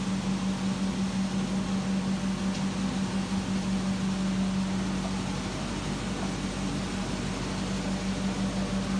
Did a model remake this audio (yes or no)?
no